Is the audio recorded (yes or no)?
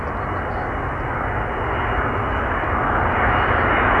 yes